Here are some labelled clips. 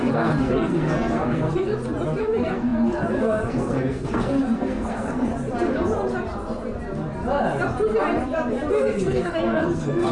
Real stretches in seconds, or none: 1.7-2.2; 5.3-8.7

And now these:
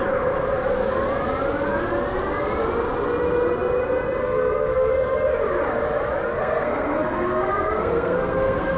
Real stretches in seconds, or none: 0.0-4.2; 4.9-6.4

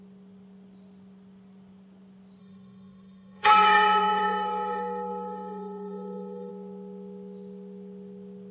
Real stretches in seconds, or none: 0.0-2.4; 6.5-8.5